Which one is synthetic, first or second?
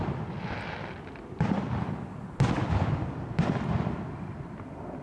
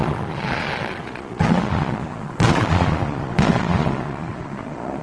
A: second